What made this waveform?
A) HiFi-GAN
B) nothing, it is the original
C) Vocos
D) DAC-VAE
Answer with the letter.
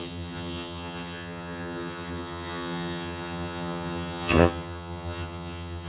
A